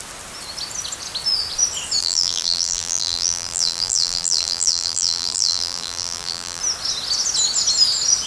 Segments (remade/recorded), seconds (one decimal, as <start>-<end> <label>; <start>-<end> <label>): 0.0-2.0 recorded; 2.0-6.6 remade; 6.6-8.3 recorded